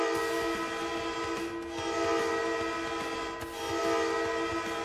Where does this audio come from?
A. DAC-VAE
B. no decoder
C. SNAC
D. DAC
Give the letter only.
B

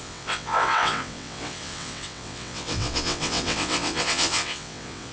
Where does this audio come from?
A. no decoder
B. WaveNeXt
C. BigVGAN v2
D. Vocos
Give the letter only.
B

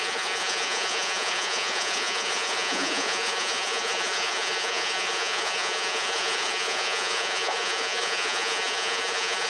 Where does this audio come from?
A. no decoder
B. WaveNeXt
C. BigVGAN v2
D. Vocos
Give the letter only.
D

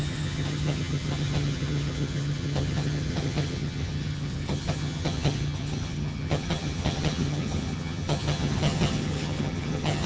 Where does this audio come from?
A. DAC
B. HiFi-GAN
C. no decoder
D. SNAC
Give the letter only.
B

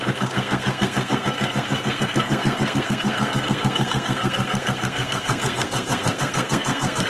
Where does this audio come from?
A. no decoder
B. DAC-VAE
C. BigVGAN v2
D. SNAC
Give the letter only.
D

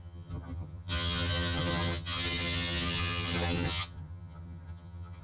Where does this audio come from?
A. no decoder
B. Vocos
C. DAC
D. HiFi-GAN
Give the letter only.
D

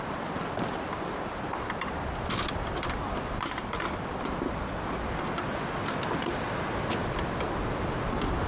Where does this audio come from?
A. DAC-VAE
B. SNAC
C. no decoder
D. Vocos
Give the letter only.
C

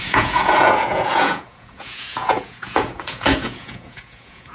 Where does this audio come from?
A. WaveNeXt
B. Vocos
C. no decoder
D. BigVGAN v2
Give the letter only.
B